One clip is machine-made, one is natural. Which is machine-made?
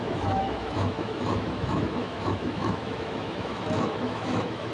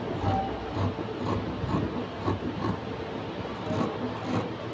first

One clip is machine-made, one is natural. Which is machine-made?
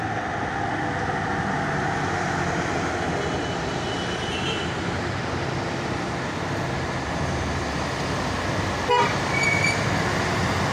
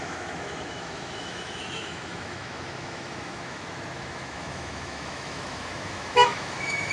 second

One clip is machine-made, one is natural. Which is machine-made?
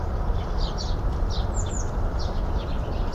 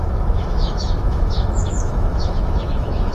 second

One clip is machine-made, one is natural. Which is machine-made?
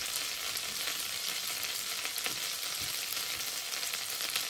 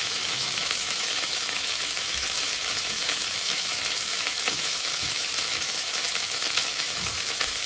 second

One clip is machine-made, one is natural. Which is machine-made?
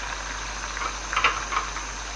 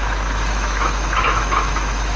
second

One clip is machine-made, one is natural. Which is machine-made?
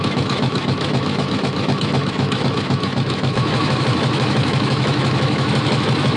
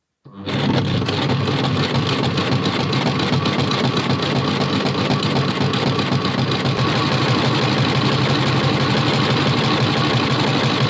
first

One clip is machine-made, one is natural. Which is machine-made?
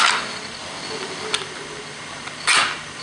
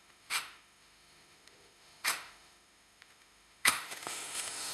second